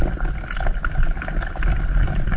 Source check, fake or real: real